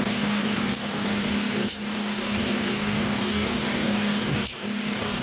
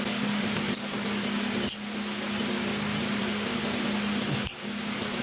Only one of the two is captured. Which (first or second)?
second